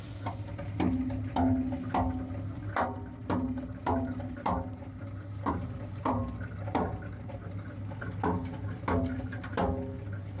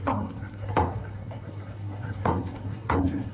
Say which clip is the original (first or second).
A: first